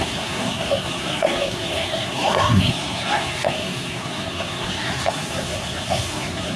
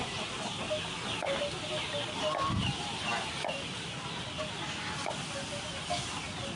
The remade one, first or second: first